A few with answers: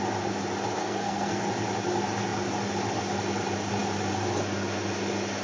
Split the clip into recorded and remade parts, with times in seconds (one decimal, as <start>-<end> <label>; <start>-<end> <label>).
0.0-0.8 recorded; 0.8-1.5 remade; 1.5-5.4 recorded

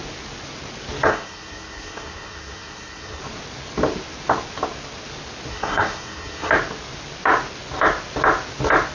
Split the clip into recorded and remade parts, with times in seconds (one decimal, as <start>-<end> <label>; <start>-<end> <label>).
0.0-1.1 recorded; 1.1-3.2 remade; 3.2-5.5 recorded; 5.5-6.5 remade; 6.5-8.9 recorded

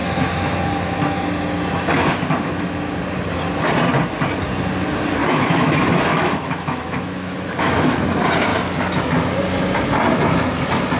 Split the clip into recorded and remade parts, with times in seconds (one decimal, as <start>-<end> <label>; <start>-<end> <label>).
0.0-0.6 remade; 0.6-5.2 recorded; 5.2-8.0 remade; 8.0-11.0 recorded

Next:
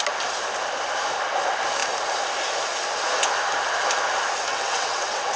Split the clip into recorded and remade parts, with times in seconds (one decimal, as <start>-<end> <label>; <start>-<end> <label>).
0.0-4.5 recorded; 4.5-5.4 remade

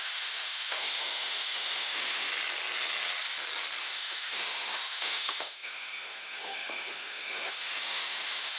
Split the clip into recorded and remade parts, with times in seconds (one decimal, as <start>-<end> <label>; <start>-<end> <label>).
0.0-2.3 remade; 2.3-3.8 recorded; 3.8-8.6 remade

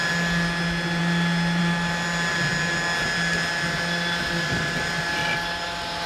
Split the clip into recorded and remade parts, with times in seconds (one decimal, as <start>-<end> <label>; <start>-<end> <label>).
0.0-6.1 recorded

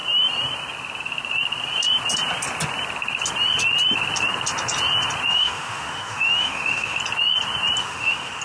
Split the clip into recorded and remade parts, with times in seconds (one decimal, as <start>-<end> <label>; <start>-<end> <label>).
0.0-5.3 recorded; 5.3-7.0 remade; 7.0-7.8 recorded; 7.8-8.4 remade

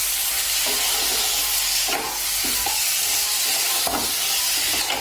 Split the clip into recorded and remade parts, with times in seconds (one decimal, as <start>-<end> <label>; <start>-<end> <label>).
0.0-5.0 recorded